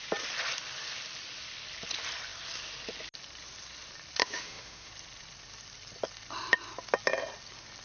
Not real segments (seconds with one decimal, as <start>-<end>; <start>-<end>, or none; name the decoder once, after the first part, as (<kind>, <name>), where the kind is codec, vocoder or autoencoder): 4.2-4.9 (autoencoder, DAC-VAE)